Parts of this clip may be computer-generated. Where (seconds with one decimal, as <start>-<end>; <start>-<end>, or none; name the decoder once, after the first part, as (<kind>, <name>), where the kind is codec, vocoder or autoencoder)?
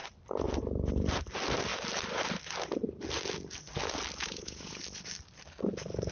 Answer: 4.2-4.8 (vocoder, Vocos)